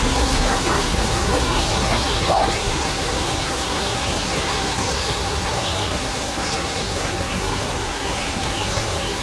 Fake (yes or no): yes